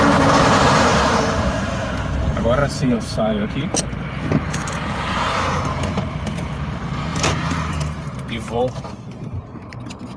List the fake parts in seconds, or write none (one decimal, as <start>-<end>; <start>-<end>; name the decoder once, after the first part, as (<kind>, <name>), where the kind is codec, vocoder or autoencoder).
0.0-10.2 (vocoder, BigVGAN v2)